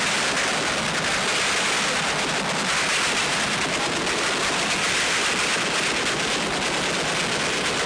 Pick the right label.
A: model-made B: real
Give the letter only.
B